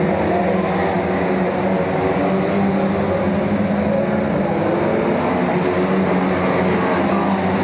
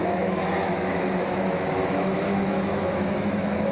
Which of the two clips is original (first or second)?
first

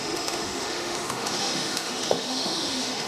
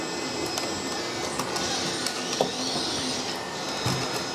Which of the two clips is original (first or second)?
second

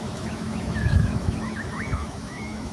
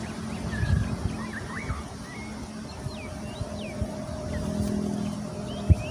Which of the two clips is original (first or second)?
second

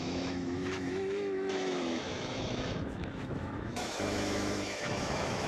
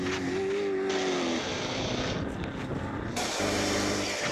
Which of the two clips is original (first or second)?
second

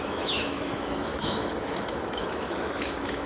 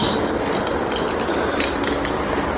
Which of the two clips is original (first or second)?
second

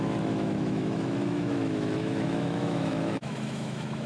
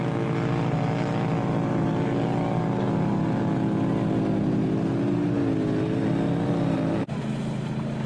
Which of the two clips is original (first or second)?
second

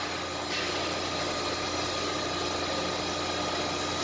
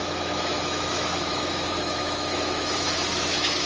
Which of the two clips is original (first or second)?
first